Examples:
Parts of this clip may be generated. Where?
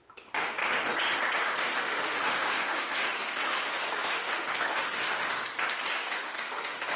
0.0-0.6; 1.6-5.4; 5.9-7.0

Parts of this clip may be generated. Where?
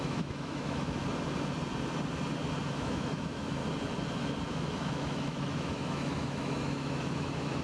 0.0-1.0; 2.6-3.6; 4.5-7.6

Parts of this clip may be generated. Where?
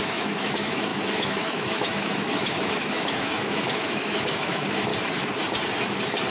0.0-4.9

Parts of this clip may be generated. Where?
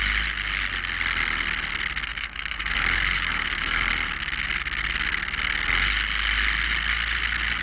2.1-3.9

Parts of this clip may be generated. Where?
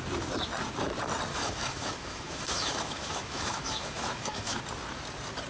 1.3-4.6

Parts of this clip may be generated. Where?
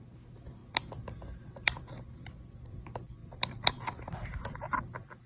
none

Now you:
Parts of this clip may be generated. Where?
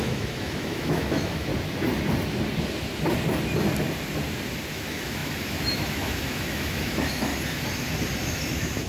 0.0-1.5; 4.7-7.3; 8.2-8.9